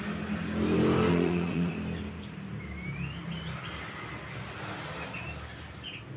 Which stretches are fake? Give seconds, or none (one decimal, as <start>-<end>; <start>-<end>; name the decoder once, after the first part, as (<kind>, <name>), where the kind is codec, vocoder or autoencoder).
1.1-1.7 (vocoder, Vocos)